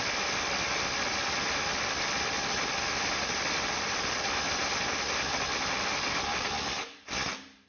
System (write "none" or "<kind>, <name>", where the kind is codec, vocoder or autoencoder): none